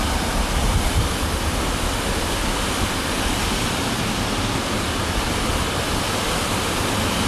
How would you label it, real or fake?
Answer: real